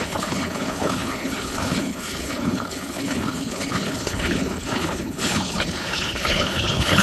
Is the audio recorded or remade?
remade